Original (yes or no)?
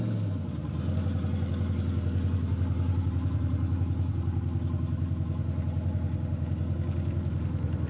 yes